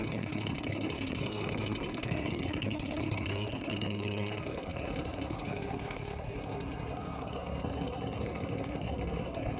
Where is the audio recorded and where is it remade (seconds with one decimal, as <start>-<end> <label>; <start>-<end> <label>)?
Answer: 0.0-9.6 remade